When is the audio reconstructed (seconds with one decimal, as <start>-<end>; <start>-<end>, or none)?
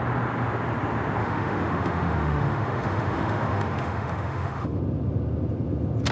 1.2-4.8